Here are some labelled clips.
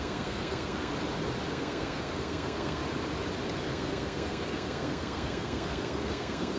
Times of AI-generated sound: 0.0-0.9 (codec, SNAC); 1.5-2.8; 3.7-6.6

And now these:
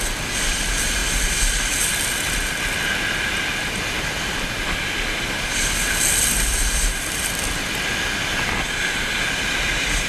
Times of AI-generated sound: none

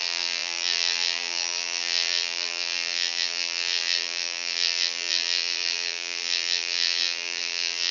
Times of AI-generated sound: 0.0-7.9 (vocoder, BigVGAN v2)

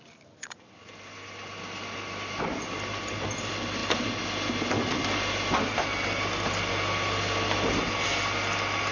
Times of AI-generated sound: none

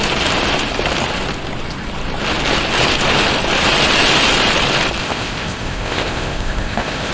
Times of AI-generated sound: 5.0-7.1 (codec, ZipCodec)